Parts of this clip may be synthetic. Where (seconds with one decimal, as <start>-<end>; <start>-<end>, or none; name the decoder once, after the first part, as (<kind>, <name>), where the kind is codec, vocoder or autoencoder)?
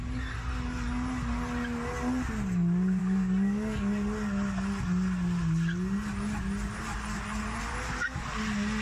3.0-3.9 (codec, DAC)